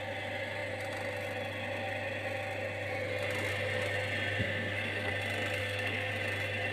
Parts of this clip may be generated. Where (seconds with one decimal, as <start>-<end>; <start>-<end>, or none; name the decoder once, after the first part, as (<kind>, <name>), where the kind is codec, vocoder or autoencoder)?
4.4-5.1 (codec, SNAC); 5.6-6.1